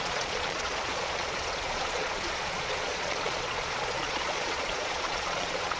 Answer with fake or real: fake